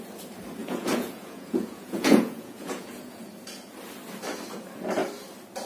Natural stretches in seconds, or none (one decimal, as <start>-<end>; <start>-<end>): 0.0-0.6; 3.3-5.7